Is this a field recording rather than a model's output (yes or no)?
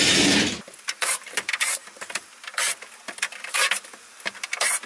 yes